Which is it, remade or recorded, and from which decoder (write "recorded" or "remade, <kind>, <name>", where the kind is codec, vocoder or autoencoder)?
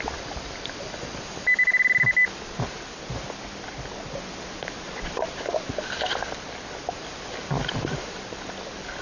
recorded